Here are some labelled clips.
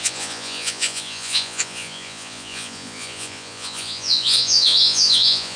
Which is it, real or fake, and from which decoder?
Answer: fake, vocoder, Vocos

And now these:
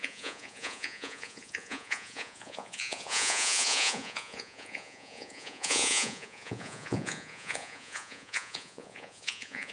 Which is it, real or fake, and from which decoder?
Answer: fake, vocoder, Vocos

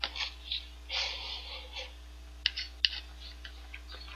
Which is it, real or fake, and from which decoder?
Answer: real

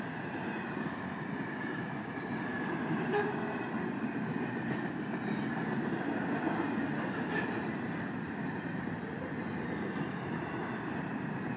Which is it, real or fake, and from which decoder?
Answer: real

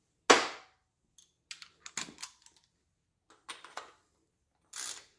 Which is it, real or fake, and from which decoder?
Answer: real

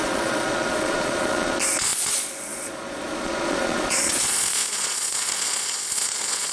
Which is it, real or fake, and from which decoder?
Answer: fake, vocoder, Vocos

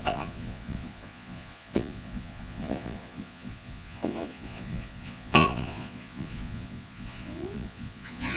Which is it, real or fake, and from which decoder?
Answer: fake, vocoder, Vocos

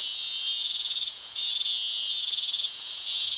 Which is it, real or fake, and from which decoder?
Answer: fake, vocoder, Vocos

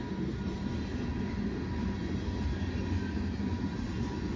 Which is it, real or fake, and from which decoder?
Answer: real